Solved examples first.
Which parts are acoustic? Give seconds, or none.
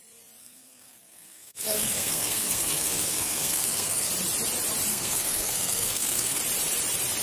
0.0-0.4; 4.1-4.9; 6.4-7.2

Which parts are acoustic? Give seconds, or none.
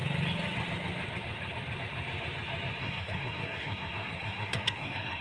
0.0-2.8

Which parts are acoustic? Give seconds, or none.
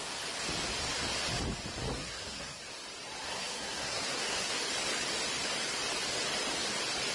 0.0-1.9; 2.6-3.2; 4.6-7.1